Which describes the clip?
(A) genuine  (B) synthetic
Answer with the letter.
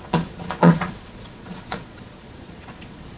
B